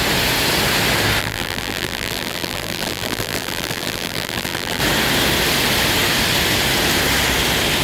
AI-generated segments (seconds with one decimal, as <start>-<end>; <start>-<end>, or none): 1.2-4.8